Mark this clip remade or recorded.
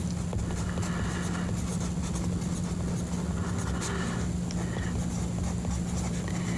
recorded